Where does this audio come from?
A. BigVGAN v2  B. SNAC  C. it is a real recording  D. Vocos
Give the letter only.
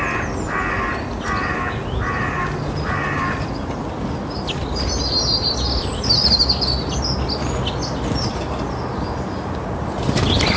C